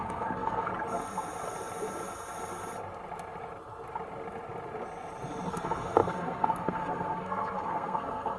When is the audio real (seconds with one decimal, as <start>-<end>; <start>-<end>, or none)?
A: 0.7-5.5